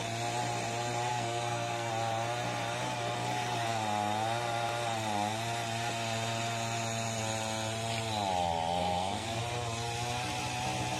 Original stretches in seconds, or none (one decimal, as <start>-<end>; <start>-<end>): 0.0-1.1; 1.9-8.8; 9.4-11.0